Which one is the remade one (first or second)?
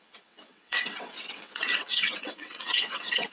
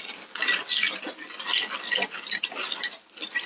first